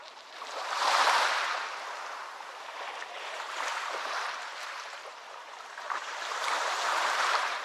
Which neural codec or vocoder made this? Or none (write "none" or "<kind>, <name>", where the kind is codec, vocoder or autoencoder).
vocoder, BigVGAN v2